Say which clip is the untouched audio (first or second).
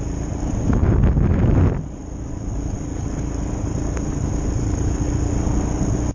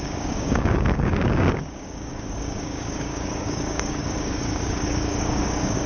first